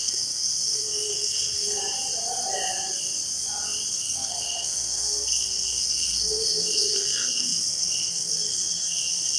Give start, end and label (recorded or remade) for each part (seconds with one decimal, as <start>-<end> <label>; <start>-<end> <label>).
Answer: 0.0-1.8 remade; 1.8-3.9 recorded; 3.9-9.4 remade